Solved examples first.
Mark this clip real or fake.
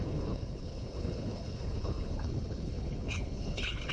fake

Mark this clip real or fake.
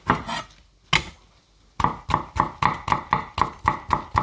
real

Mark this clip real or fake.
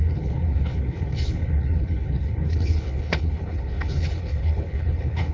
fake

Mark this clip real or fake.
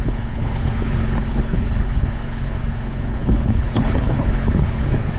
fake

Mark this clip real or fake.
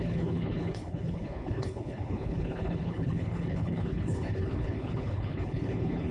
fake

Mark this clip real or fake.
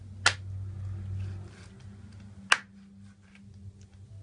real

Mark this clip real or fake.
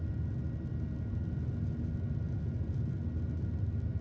real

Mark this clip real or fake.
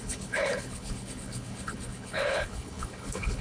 fake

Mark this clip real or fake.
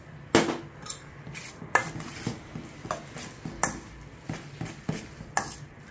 real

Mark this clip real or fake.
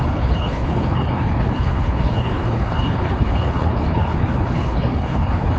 fake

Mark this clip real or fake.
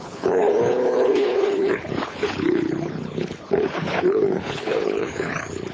fake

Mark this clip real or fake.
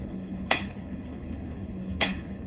fake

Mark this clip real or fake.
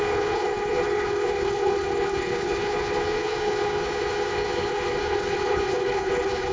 fake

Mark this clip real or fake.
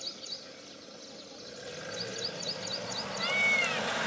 real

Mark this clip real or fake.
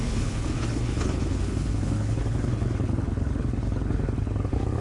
fake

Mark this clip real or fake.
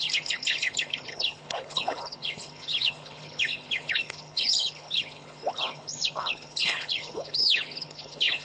fake